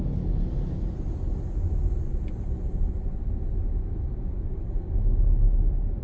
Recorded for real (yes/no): yes